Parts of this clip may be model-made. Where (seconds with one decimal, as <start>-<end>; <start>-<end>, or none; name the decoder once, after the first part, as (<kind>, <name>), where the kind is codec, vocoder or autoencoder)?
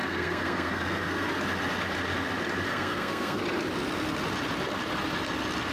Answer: 0.0-1.3 (codec, SNAC); 2.7-3.4